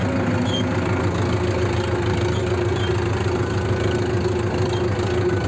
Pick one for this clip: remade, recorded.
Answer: recorded